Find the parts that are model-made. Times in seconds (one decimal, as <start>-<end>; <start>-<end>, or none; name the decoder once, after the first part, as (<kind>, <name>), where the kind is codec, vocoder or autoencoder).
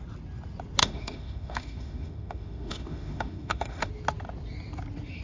0.8-3.9 (autoencoder, DAC-VAE)